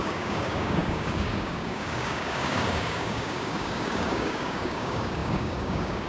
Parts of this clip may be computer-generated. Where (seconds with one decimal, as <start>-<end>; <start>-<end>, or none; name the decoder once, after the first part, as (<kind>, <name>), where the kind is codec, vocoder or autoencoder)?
0.0-6.1 (codec, DAC)